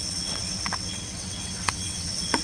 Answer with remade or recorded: remade